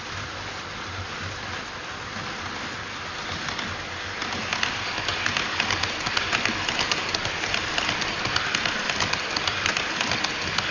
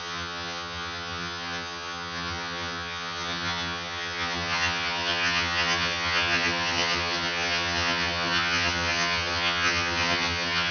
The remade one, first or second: second